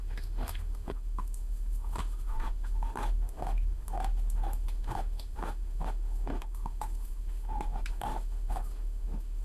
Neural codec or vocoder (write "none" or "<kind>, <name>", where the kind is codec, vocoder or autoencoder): autoencoder, DAC-VAE